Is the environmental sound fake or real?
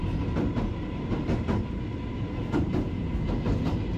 real